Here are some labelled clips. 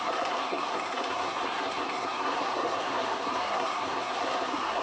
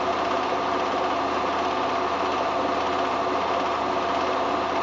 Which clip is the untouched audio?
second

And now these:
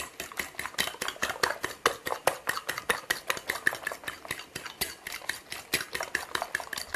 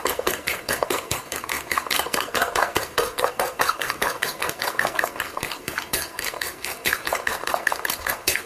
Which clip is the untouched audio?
first